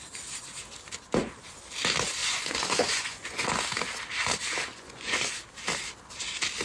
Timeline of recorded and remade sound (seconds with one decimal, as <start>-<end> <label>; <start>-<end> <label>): 0.0-2.2 recorded; 2.2-3.5 remade; 3.5-4.7 recorded; 4.7-5.3 remade; 5.3-6.6 recorded